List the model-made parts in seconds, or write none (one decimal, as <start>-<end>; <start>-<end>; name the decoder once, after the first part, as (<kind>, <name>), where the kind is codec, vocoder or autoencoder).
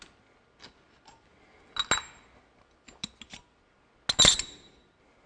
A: none